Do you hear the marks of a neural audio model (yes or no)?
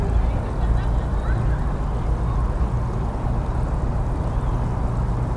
no